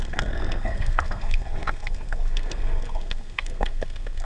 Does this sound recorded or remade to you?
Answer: remade